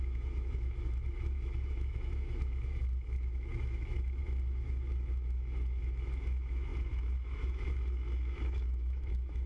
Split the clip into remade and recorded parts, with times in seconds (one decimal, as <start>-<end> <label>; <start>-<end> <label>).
0.0-9.5 remade